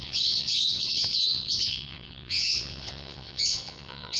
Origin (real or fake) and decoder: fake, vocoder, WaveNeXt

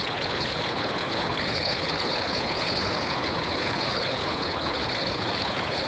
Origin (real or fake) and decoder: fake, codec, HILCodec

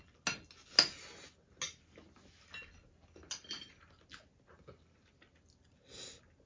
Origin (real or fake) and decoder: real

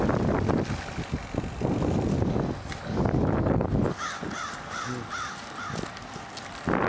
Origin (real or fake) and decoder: real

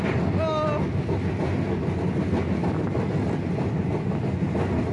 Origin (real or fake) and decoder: real